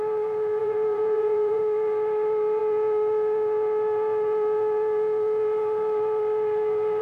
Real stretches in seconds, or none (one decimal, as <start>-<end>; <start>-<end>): 0.0-0.6; 1.6-7.0